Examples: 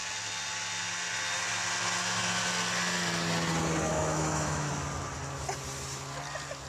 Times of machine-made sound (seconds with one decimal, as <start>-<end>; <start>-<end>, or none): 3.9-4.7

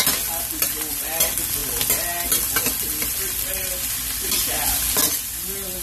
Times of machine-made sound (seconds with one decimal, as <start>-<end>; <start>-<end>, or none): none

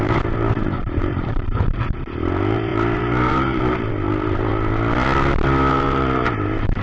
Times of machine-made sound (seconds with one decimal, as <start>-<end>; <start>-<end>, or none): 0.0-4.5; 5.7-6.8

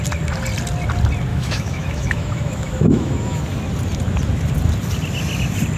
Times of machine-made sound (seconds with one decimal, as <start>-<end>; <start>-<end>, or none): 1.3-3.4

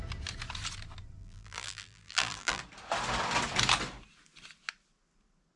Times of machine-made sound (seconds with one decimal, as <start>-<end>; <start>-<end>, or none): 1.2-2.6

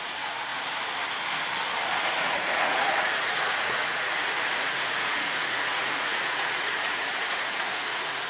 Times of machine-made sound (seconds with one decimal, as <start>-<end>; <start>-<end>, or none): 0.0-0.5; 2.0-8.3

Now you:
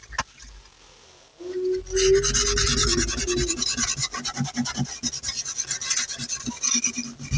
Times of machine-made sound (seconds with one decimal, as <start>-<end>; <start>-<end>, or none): none

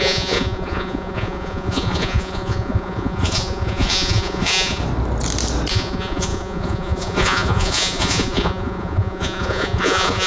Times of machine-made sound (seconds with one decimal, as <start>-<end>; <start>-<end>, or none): 0.0-4.8; 5.7-10.3